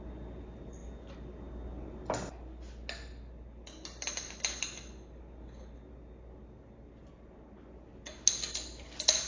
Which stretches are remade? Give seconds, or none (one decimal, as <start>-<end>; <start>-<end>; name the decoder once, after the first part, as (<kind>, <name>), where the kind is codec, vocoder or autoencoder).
none